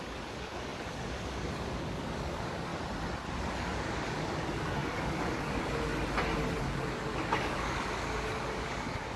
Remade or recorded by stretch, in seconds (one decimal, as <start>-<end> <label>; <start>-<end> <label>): 0.0-2.7 remade; 2.7-3.5 recorded; 3.5-5.9 remade; 5.9-6.6 recorded; 6.6-9.2 remade